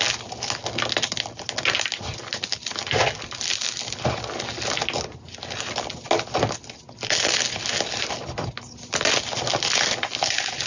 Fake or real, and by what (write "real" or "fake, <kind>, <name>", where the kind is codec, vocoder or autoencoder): real